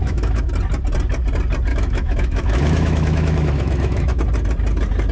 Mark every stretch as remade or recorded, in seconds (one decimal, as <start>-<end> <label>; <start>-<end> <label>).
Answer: 0.0-0.5 remade; 0.5-1.7 recorded; 1.7-4.2 remade; 4.2-5.1 recorded